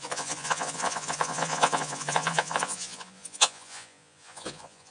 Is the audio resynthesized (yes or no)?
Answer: yes